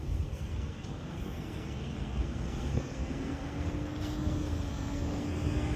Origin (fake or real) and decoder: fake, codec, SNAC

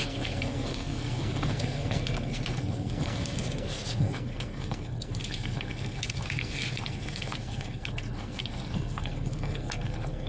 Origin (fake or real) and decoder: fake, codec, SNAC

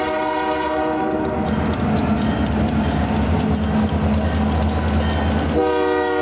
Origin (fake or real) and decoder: real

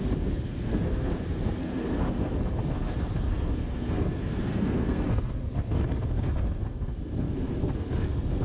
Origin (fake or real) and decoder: fake, codec, SNAC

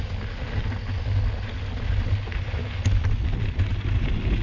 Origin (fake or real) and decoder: real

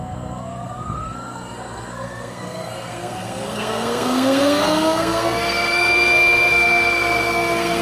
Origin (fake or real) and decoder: fake, codec, SNAC